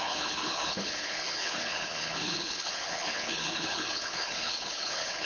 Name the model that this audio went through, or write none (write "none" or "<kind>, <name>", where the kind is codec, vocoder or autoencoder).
codec, HILCodec